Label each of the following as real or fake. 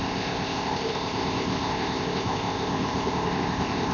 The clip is fake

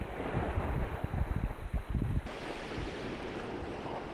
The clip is real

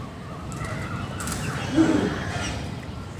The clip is real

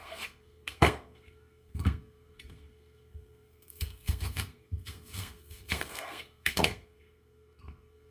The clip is fake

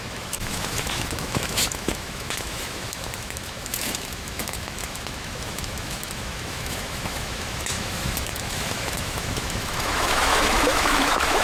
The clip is fake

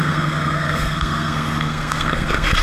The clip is fake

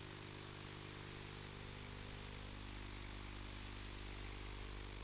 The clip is real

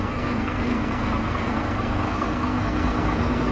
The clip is fake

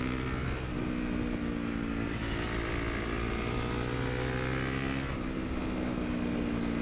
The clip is real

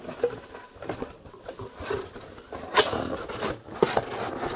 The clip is real